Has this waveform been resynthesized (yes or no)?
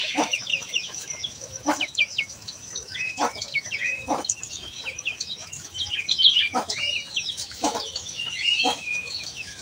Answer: yes